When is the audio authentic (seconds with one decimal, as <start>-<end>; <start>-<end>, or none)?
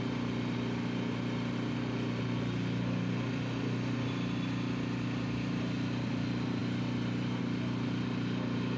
0.0-8.8